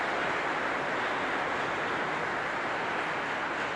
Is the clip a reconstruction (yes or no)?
no